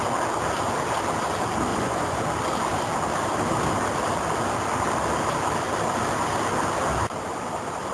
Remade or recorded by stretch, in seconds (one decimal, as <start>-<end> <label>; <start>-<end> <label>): 0.0-1.7 recorded; 1.7-2.2 remade; 2.2-7.9 recorded

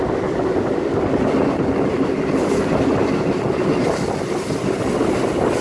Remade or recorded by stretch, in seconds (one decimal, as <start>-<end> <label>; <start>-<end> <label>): 0.0-5.6 recorded

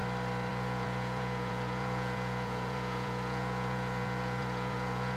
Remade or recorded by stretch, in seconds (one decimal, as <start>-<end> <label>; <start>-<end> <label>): 0.0-0.5 recorded; 0.5-5.2 remade

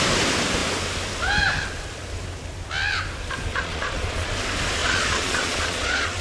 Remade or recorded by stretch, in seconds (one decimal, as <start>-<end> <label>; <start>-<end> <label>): 0.0-3.5 recorded; 3.5-4.3 remade; 4.3-4.8 recorded; 4.8-6.2 remade

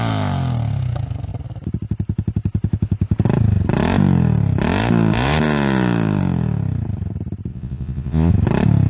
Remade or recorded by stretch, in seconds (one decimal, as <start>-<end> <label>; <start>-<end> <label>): 0.0-7.5 recorded; 7.5-8.3 remade; 8.3-8.9 recorded

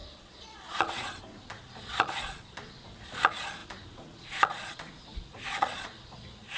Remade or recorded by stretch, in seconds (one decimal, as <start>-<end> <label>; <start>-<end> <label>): 0.0-6.6 remade

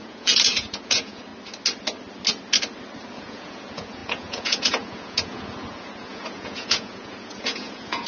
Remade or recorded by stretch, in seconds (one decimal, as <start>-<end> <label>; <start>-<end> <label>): 0.0-1.3 remade; 1.3-3.2 recorded; 3.2-8.1 remade

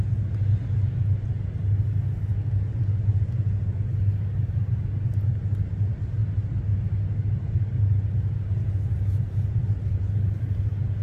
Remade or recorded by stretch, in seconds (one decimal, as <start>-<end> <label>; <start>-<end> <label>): 0.0-11.0 recorded